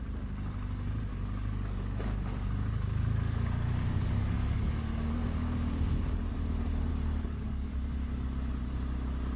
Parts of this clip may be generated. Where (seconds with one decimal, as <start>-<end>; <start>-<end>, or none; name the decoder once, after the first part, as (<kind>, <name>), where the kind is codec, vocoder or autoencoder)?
1.1-6.3 (codec, DAC); 6.9-7.7